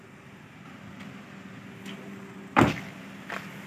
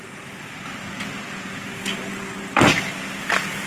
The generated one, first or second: second